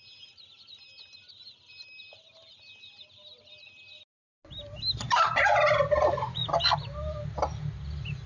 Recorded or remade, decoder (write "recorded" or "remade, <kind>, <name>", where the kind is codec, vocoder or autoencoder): recorded